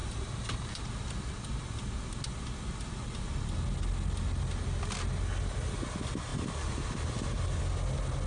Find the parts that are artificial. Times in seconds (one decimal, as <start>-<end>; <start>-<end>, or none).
0.0-0.7